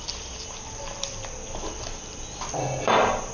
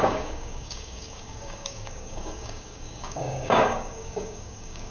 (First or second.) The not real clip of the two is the second